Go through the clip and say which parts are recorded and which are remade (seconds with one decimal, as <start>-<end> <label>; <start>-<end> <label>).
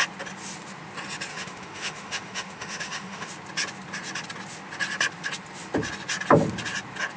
0.0-1.3 recorded; 1.3-3.3 remade; 3.3-7.2 recorded